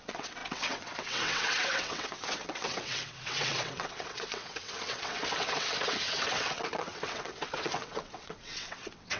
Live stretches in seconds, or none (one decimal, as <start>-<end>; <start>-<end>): none